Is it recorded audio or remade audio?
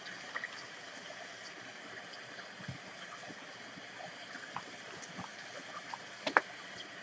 recorded